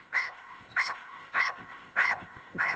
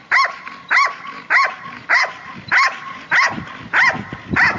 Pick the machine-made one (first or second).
first